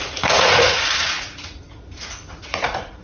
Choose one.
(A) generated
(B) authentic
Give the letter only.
A